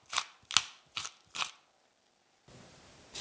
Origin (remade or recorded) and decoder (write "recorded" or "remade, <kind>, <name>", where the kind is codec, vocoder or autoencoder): recorded